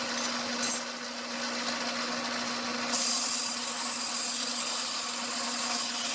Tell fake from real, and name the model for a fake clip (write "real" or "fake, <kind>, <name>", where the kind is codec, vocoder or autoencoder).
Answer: real